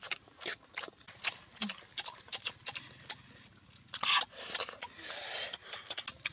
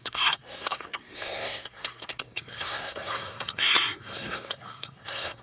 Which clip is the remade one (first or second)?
second